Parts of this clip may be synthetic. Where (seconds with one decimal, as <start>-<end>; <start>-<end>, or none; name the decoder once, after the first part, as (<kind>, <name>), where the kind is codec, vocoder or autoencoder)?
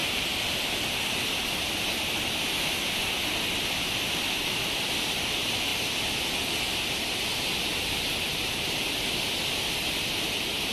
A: none